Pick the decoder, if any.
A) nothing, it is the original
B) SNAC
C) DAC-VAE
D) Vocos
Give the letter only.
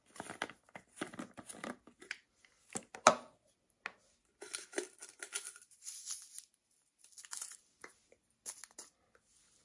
A